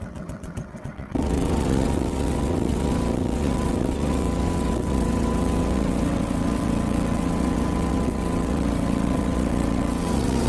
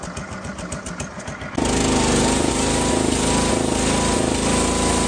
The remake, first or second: first